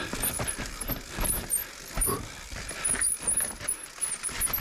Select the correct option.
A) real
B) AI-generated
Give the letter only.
B